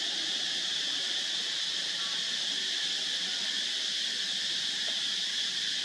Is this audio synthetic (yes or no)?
no